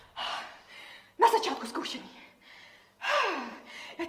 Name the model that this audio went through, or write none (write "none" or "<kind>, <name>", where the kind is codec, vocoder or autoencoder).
vocoder, BigVGAN v2